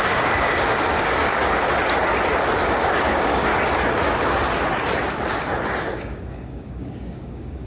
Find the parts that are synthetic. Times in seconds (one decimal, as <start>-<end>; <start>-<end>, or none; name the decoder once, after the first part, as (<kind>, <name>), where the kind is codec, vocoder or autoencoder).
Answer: 0.0-1.7 (codec, DAC); 2.6-3.5; 5.9-7.7